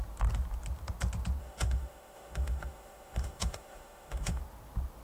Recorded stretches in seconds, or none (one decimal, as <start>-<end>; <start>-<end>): 0.0-1.4; 4.4-5.0